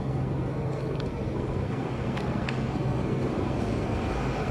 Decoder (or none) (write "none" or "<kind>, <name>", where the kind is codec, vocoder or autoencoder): codec, SNAC